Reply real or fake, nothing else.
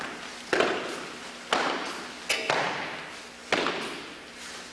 real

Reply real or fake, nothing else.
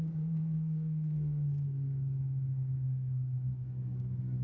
fake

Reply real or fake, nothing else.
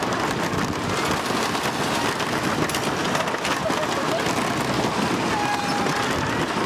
real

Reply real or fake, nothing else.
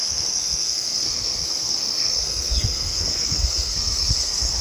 fake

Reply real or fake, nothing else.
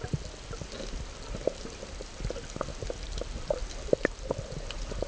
real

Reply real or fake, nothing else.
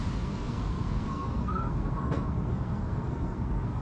fake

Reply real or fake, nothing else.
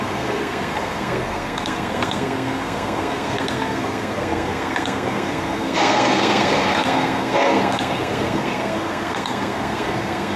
fake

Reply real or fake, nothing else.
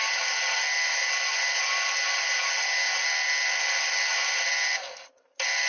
real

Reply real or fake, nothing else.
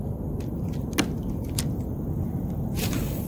real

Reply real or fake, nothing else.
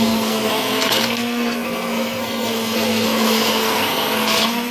fake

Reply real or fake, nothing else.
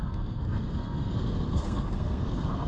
fake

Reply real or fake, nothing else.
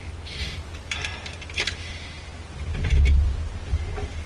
real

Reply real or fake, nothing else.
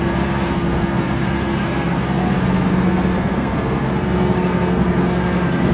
fake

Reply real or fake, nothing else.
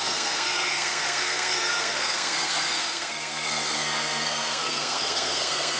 fake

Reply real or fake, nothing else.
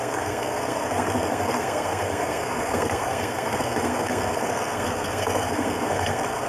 fake